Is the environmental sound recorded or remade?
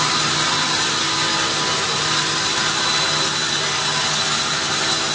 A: recorded